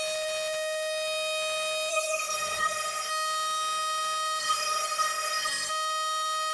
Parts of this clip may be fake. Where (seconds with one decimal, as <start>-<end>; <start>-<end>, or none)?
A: 1.9-3.1; 4.4-5.7